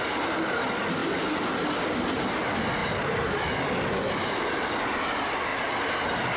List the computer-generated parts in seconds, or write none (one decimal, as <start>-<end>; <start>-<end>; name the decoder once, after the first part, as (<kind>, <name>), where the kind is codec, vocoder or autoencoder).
none